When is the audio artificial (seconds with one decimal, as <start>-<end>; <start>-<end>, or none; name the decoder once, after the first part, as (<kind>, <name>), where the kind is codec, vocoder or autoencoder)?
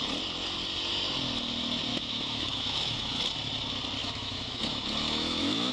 1.9-3.2 (autoencoder, DAC-VAE); 4.0-5.7